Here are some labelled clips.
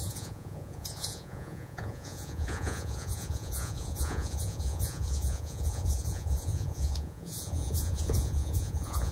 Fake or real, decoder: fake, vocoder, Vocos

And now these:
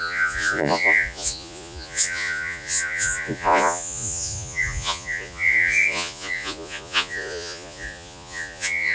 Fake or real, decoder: fake, vocoder, Vocos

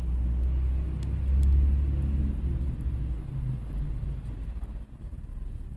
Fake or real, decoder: real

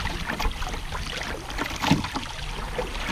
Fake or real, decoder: real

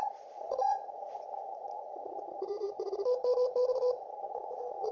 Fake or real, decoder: fake, vocoder, Vocos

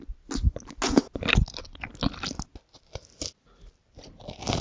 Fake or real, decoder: real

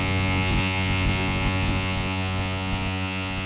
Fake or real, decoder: fake, vocoder, Vocos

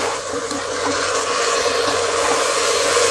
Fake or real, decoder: fake, vocoder, Vocos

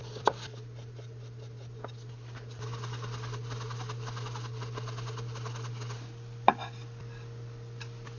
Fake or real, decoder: real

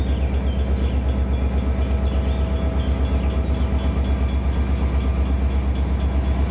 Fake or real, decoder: real